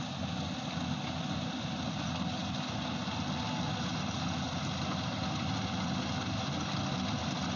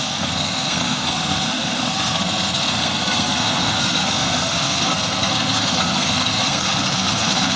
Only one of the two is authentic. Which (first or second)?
first